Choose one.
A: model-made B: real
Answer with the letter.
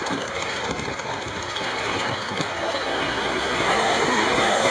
A